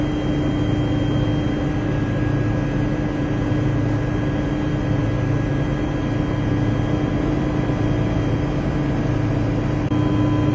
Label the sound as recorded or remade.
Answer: recorded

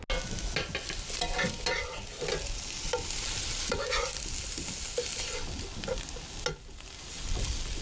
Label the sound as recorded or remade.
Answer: recorded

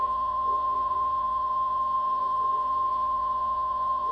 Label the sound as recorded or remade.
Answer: remade